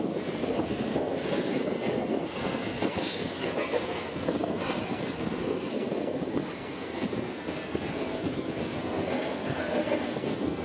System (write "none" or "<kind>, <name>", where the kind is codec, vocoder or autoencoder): codec, SNAC